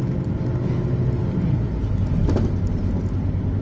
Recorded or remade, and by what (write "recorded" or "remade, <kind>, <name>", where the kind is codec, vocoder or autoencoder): recorded